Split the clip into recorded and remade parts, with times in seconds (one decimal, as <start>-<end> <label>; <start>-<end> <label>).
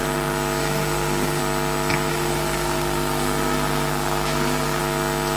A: 0.0-0.6 recorded; 0.6-1.4 remade; 1.4-2.1 recorded; 2.1-4.8 remade; 4.8-5.4 recorded